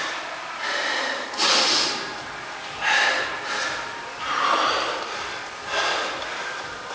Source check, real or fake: fake